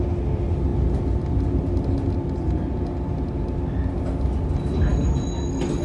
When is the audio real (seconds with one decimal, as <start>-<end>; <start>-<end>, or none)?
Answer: 0.0-5.8